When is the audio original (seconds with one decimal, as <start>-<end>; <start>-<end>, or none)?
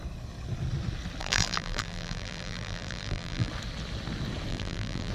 0.0-1.2; 3.5-4.5